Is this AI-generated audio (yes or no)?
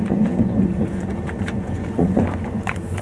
yes